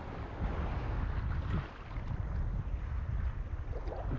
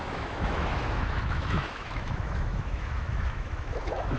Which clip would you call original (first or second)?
first